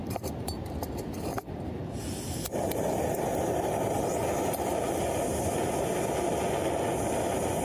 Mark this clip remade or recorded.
recorded